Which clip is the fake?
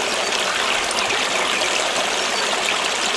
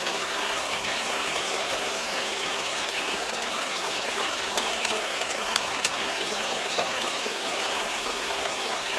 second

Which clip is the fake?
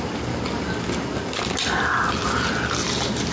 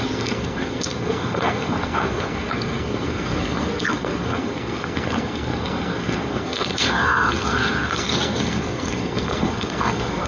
second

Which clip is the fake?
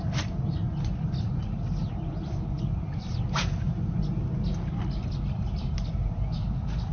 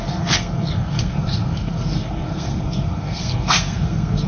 second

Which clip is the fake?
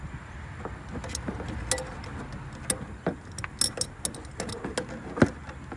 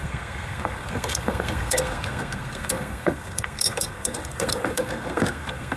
second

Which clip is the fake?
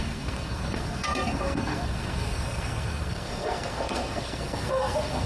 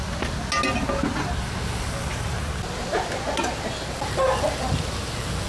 first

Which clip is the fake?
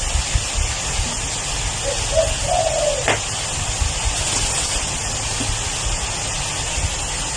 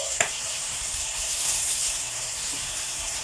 second